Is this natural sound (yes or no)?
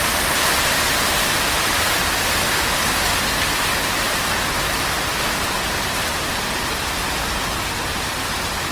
yes